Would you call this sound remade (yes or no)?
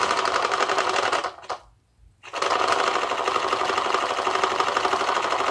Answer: no